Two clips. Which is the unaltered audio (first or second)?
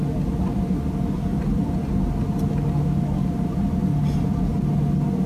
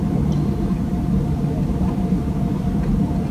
first